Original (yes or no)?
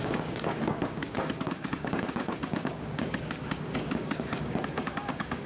no